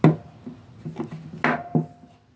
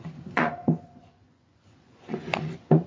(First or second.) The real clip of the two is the first